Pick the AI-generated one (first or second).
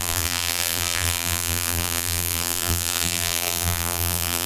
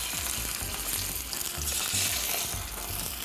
first